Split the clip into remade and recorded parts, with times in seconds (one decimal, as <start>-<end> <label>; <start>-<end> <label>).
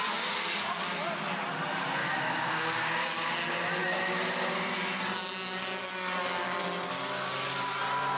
0.0-2.0 recorded; 2.0-3.3 remade; 3.3-8.2 recorded